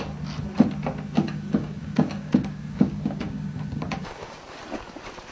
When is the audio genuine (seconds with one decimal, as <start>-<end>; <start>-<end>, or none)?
0.0-1.2; 4.4-5.3